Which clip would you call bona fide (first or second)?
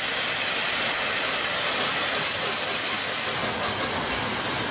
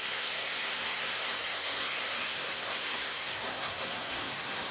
first